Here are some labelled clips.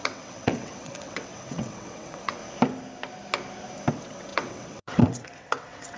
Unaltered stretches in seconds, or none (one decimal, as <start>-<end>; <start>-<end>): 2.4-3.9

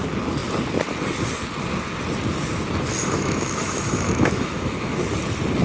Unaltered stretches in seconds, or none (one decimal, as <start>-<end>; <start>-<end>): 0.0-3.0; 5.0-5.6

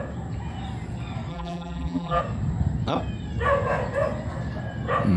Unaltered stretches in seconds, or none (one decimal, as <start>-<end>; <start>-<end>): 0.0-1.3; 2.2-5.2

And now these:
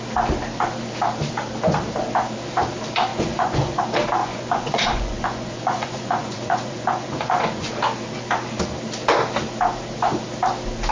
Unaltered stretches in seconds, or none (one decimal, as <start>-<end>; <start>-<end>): 0.0-3.1; 3.8-4.2; 7.7-10.9

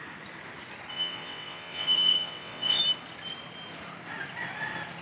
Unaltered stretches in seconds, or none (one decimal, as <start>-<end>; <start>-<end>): 0.0-0.9; 2.8-5.0

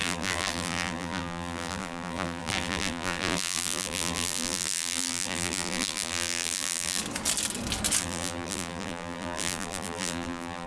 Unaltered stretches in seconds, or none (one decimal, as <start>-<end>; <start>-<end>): 7.0-8.0

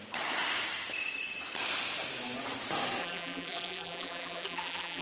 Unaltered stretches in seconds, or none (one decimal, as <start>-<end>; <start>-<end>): 0.0-3.0